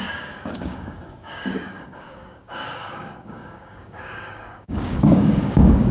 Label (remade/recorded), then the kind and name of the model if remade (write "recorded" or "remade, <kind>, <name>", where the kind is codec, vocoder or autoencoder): remade, codec, DAC